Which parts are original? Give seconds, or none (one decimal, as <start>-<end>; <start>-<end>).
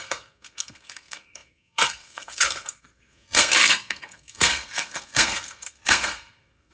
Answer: none